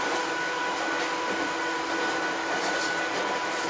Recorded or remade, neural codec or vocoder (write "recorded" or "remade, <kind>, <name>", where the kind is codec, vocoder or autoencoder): recorded